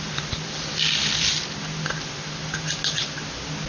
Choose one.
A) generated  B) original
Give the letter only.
B